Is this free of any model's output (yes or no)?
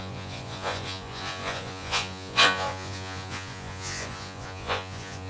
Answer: no